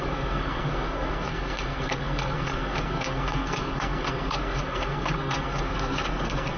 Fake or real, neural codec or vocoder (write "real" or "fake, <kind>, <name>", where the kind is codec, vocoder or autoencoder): fake, codec, SNAC